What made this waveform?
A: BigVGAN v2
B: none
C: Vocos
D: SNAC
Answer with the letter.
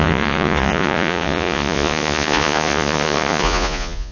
C